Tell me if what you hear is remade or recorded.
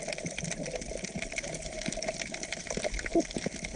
remade